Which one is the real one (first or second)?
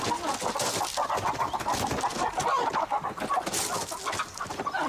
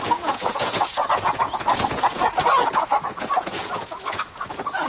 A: first